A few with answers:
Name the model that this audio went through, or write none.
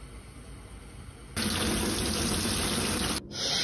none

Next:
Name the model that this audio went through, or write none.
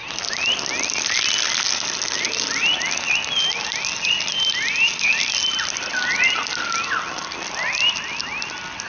none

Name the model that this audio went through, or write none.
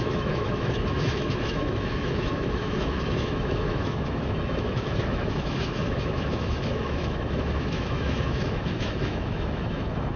autoencoder, DAC-VAE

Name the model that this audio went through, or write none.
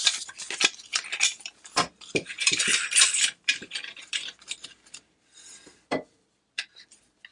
vocoder, BigVGAN v2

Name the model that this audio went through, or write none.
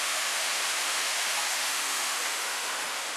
autoencoder, DAC-VAE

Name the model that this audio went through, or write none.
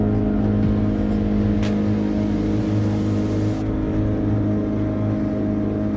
none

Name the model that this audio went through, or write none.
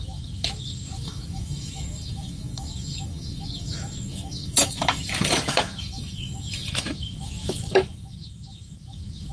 autoencoder, DAC-VAE